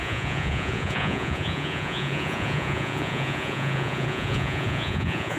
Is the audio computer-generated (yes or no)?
yes